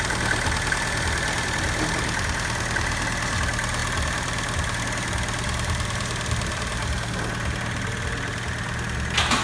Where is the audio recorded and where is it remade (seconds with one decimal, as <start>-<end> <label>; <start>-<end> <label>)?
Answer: 0.0-9.4 recorded